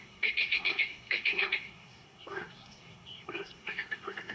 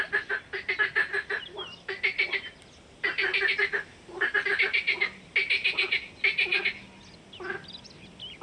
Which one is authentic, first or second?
second